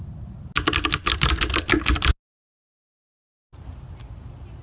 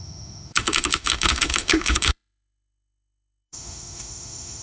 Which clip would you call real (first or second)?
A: first